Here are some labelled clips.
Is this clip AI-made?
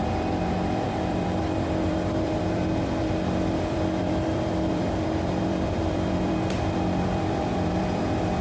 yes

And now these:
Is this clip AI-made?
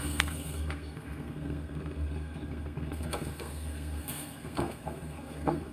yes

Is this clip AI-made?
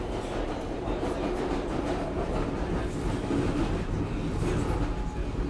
no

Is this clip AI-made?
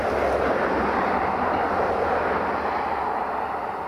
no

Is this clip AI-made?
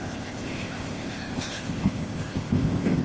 yes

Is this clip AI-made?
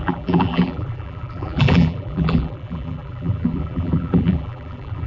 yes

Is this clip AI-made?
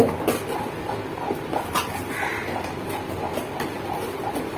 no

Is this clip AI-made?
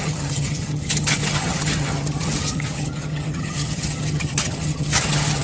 yes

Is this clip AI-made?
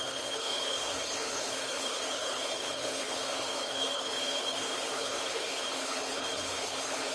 yes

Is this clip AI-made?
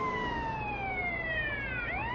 yes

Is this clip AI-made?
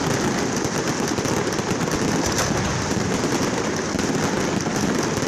no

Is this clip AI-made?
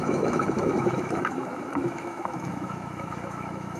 yes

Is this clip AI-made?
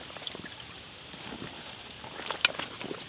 no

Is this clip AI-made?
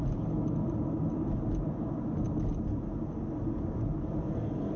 no